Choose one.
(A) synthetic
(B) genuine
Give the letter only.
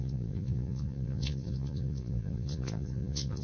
A